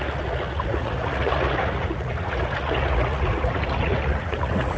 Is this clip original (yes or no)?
no